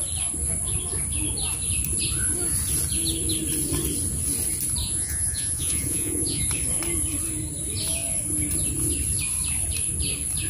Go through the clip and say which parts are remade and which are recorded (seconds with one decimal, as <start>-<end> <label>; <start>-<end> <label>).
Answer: 0.0-4.8 recorded; 4.8-6.4 remade; 6.4-10.5 recorded